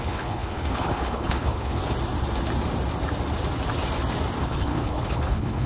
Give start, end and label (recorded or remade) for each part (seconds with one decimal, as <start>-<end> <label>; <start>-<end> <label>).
0.0-1.8 remade; 1.8-4.4 recorded; 4.4-5.7 remade